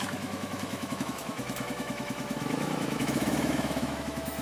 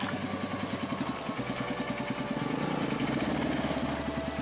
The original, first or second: second